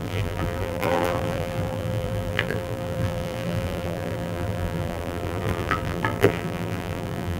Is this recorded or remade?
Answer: remade